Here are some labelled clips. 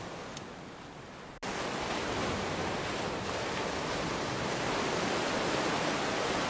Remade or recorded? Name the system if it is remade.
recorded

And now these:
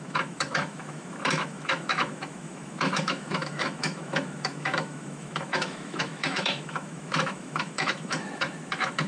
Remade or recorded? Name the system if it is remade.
remade, autoencoder, DAC-VAE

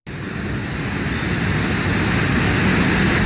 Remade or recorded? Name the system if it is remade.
recorded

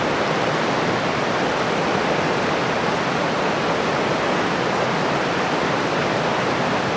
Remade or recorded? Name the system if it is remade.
recorded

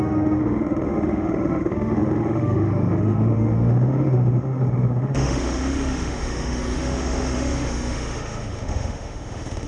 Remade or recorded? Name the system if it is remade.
remade, autoencoder, DAC-VAE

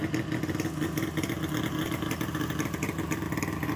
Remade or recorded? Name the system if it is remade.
recorded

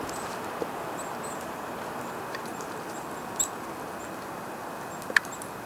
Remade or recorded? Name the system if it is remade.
recorded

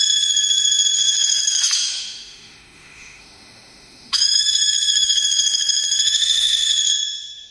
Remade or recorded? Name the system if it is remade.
remade, autoencoder, DAC-VAE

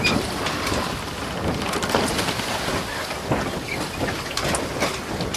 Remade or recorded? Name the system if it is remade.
recorded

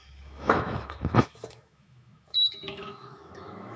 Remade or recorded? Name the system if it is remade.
remade, autoencoder, DAC-VAE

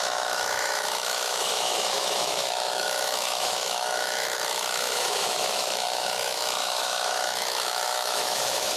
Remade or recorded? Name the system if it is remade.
remade, autoencoder, DAC-VAE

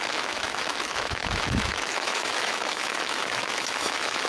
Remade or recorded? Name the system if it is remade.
remade, autoencoder, DAC-VAE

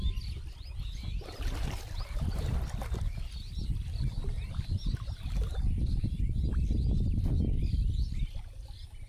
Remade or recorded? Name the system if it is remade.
recorded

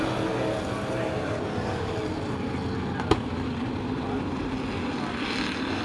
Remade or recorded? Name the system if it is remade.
recorded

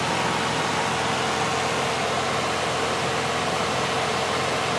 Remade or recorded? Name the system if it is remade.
recorded